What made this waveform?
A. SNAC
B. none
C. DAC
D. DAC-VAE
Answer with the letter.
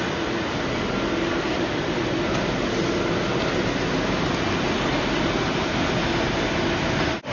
B